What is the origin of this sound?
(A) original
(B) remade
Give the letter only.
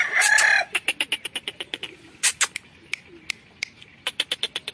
A